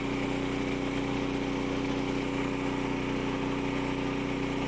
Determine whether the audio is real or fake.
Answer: real